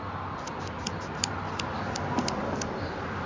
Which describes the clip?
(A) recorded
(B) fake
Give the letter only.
A